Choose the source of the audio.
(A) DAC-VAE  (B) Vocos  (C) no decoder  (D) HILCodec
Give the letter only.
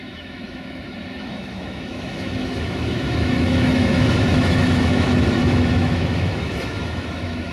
A